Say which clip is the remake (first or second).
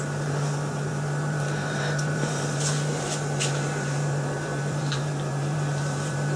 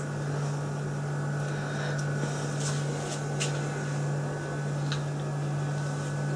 first